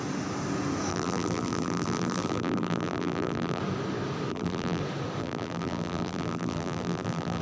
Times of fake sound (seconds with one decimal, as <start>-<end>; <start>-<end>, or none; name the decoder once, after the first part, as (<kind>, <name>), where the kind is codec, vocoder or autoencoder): 0.9-3.6 (vocoder, BigVGAN v2); 4.3-4.8; 5.2-7.4